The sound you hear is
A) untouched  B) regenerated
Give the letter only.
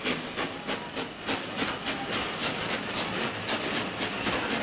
A